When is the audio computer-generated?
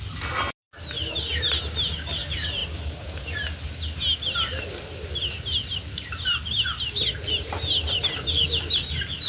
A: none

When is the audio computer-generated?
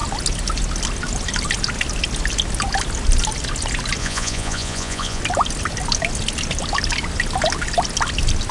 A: 4.0-5.2 (vocoder, Vocos)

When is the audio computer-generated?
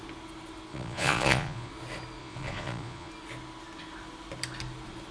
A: 0.7-1.7 (vocoder, Vocos); 2.2-3.1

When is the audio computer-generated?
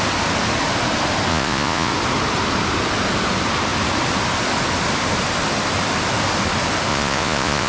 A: 1.3-1.9 (vocoder, Vocos); 6.9-7.7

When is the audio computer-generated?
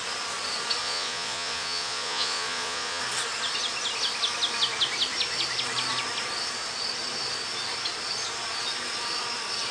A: 0.8-3.0 (vocoder, Vocos)